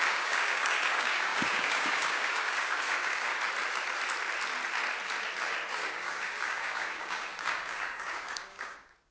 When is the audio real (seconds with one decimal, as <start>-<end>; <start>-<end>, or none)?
3.3-5.7